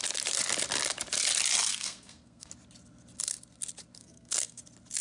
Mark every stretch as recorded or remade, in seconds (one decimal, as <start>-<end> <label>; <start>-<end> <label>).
0.0-1.7 recorded; 1.7-2.5 remade; 2.5-4.0 recorded; 4.0-4.6 remade; 4.6-5.0 recorded